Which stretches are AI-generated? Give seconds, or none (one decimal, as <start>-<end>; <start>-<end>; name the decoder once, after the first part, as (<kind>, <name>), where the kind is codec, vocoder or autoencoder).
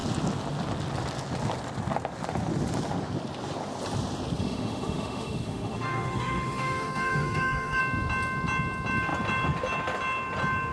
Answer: 4.4-7.8 (autoencoder, DAC-VAE)